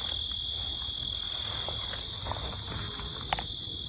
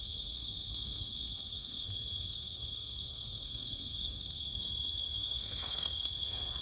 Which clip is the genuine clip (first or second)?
first